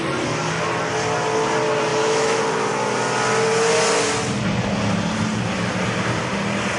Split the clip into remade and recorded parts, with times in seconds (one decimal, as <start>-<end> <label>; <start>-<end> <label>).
0.0-1.9 recorded; 1.9-2.4 remade; 2.4-6.8 recorded